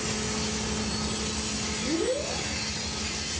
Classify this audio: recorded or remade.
recorded